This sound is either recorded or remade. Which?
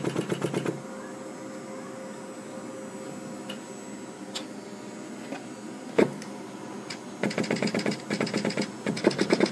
recorded